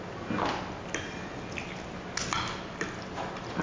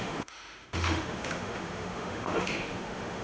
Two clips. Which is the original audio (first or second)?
first